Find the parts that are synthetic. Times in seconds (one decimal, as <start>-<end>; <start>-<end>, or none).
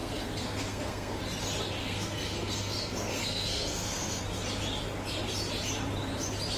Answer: 0.0-1.2; 1.8-4.2